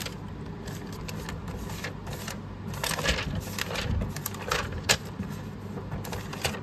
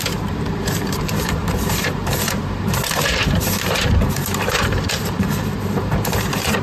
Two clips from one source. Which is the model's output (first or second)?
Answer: second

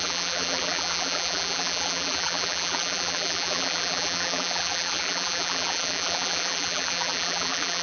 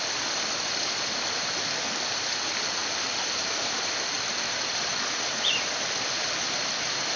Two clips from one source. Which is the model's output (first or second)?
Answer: first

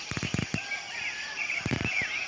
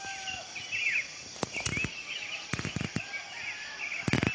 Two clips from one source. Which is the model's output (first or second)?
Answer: first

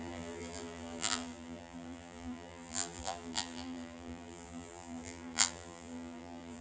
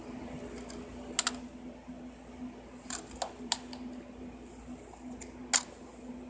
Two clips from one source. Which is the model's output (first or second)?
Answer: first